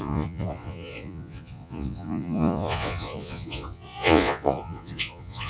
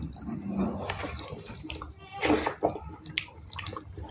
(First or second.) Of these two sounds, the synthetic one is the first